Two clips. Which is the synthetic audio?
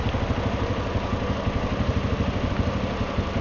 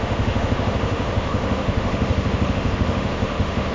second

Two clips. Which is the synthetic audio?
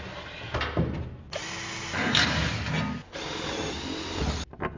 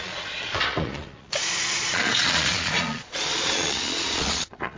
second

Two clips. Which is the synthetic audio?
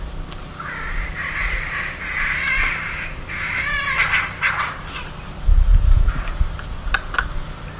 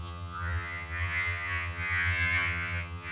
second